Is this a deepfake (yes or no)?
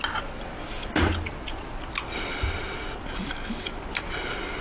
no